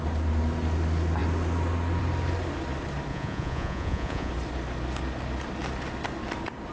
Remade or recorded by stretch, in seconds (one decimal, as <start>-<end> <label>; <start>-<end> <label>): 0.0-3.1 recorded; 3.1-4.3 remade; 4.3-6.7 recorded